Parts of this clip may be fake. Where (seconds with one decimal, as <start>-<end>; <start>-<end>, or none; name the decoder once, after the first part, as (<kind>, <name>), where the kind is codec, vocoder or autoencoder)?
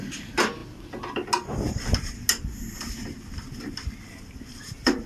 none